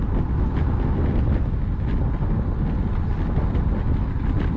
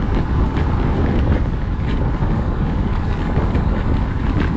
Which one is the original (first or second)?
first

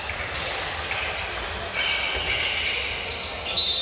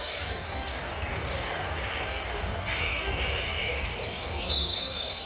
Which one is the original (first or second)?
first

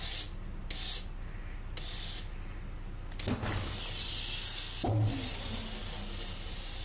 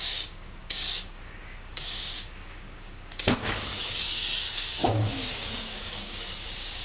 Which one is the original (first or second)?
first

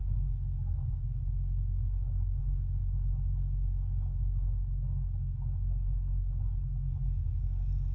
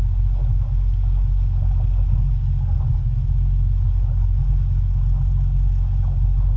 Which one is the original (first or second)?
second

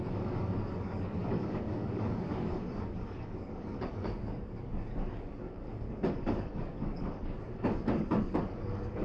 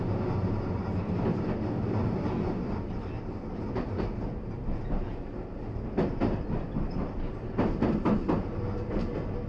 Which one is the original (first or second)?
second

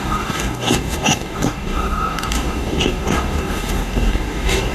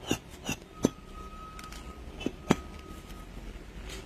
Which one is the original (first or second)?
second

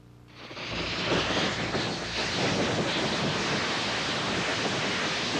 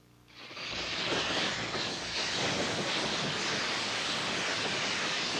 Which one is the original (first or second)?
first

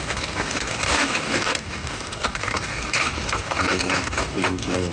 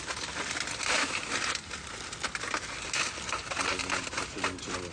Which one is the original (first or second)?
second